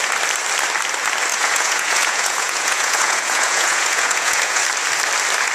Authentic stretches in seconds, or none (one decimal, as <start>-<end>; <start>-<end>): 0.0-1.3; 4.6-5.5